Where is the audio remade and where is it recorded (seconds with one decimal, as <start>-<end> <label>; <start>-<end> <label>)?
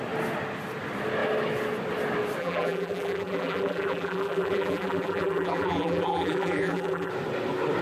0.0-2.4 recorded; 2.4-7.1 remade; 7.1-7.8 recorded